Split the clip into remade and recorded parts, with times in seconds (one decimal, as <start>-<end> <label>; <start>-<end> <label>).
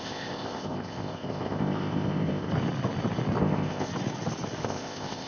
0.0-2.5 remade; 2.5-3.4 recorded; 3.4-3.9 remade; 3.9-4.6 recorded; 4.6-5.3 remade